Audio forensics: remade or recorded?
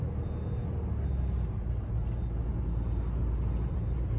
recorded